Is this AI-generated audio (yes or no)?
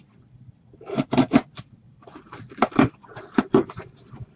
yes